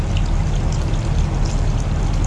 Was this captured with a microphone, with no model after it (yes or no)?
yes